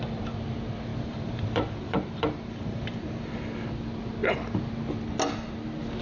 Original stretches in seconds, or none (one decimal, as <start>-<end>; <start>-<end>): 0.0-0.9; 3.4-6.0